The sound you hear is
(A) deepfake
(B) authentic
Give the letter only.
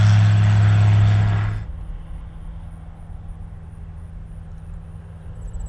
B